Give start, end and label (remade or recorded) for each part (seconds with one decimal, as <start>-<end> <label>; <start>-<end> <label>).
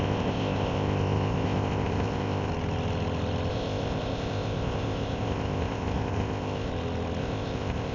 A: 0.0-2.5 remade; 2.5-3.5 recorded; 3.5-6.7 remade; 6.7-7.2 recorded; 7.2-7.9 remade